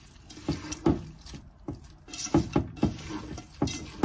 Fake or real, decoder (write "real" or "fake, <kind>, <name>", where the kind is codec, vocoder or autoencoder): real